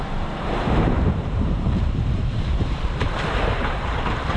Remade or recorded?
remade